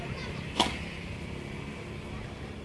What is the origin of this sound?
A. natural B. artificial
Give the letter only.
A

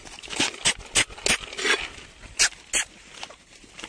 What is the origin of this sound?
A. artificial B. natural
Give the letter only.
B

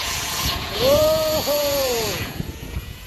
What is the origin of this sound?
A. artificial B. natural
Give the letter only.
A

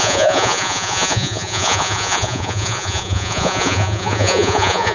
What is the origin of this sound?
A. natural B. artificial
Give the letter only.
B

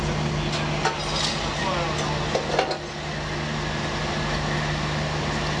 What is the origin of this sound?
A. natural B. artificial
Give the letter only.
A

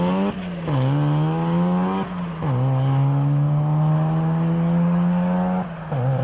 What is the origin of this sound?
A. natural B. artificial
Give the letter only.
A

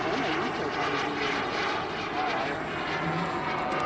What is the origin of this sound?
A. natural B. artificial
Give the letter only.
A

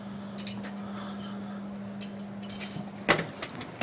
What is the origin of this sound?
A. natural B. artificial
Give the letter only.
A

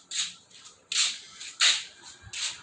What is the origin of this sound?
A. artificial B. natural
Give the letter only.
B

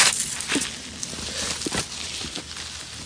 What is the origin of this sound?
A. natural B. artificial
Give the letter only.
A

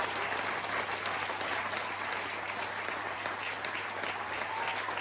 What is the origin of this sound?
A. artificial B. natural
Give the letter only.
B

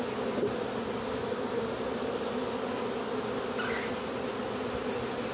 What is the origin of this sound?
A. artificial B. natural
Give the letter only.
B